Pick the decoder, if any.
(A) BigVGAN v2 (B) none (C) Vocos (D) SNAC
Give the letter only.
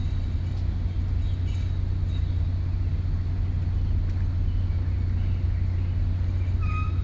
B